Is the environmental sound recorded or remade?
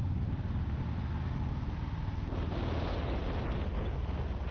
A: recorded